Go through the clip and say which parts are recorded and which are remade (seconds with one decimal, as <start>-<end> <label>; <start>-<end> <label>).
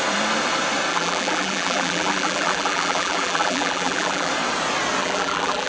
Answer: 0.0-0.9 recorded; 0.9-4.3 remade; 4.3-5.0 recorded; 5.0-5.7 remade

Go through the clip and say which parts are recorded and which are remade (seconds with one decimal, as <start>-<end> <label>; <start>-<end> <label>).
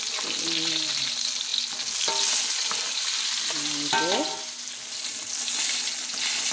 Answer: 0.0-6.5 recorded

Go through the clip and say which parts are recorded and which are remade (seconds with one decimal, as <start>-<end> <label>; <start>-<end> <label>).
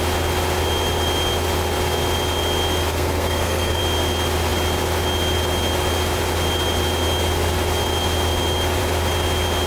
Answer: 0.0-2.9 recorded; 2.9-3.8 remade; 3.8-9.7 recorded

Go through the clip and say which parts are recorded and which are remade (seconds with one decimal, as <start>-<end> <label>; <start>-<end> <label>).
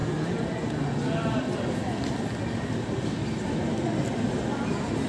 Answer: 0.0-5.1 recorded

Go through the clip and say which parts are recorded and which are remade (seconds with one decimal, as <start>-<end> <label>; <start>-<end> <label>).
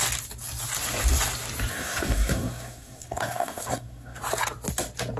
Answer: 0.0-1.7 recorded; 1.7-4.2 remade; 4.2-5.2 recorded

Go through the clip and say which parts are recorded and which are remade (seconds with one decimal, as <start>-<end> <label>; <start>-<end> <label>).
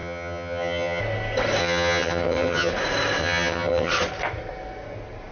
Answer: 0.0-1.0 remade; 1.0-1.6 recorded; 1.6-2.7 remade; 2.7-3.2 recorded; 3.2-3.9 remade; 3.9-5.3 recorded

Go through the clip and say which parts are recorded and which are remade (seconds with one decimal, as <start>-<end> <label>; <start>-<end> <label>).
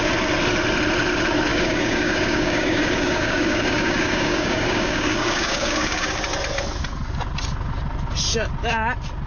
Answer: 0.0-1.5 recorded; 1.5-6.2 remade; 6.2-9.3 recorded